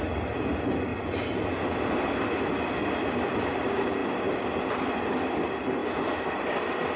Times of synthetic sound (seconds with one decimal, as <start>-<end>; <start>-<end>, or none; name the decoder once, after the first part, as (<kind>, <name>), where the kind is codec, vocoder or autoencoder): 5.8-6.6 (vocoder, BigVGAN v2)